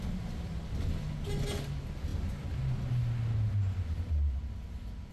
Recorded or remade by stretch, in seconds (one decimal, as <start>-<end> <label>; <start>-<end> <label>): 0.0-5.1 recorded